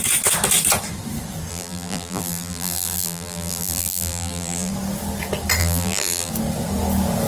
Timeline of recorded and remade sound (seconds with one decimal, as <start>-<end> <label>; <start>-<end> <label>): 0.0-1.5 recorded; 1.5-4.7 remade; 4.7-5.6 recorded; 5.6-6.3 remade; 6.3-7.3 recorded